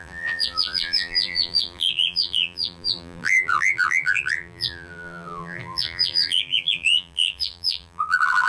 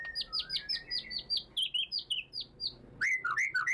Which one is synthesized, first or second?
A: first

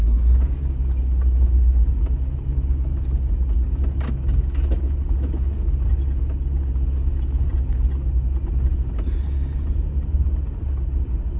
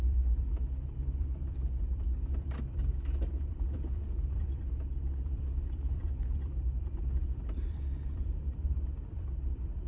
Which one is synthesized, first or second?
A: second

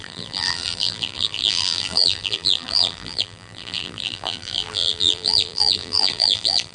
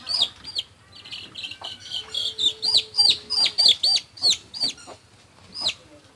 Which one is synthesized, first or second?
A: first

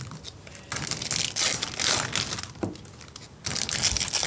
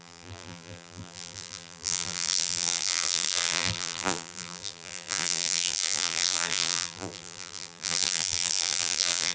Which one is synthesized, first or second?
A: second